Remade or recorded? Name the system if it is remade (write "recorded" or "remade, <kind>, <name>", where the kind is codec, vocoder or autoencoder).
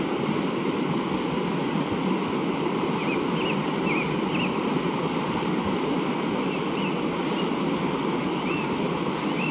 recorded